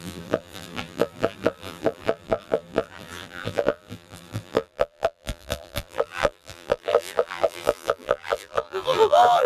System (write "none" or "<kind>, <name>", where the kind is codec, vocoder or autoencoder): vocoder, BigVGAN v2